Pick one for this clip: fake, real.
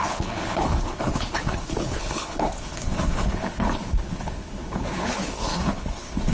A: fake